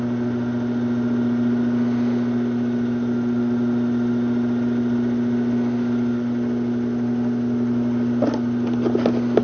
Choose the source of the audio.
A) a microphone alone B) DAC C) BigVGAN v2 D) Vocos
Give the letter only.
A